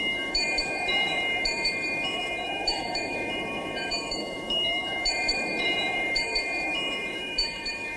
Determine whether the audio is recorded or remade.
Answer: remade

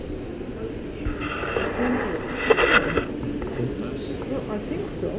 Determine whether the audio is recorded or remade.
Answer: recorded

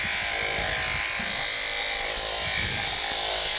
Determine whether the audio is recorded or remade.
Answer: recorded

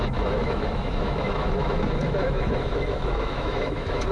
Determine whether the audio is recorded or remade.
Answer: remade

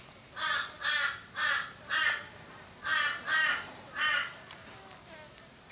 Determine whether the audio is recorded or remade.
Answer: recorded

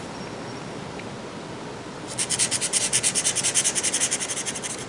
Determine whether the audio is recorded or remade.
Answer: recorded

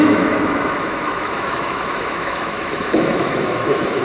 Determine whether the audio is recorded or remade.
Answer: remade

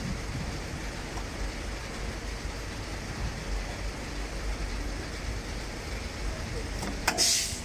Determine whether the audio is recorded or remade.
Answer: recorded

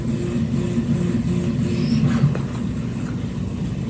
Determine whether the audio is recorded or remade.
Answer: recorded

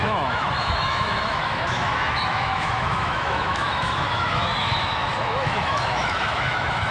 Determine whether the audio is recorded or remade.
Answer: remade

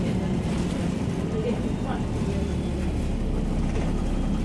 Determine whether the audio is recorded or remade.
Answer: recorded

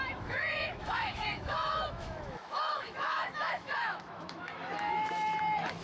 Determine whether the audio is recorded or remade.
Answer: remade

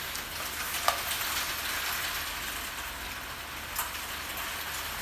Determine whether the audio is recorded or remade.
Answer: recorded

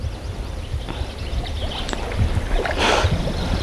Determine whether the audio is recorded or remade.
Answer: recorded